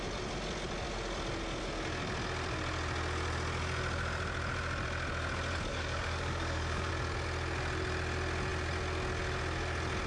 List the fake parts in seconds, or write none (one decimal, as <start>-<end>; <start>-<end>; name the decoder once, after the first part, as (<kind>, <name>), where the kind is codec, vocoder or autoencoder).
5.7-6.9 (codec, DAC)